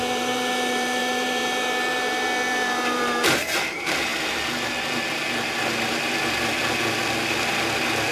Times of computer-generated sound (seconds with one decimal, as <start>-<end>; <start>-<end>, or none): 0.0-4.1